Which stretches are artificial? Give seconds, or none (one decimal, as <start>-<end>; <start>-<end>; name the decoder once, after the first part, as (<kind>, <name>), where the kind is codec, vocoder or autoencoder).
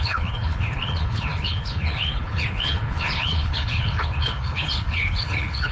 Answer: 0.0-5.7 (codec, HILCodec)